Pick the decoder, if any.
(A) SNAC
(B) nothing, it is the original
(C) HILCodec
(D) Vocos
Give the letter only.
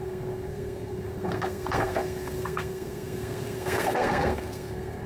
A